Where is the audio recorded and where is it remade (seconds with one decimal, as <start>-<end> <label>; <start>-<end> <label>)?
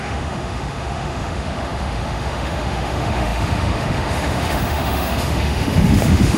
0.0-6.4 remade